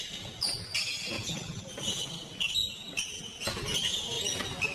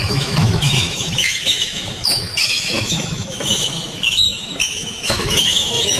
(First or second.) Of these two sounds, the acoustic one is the first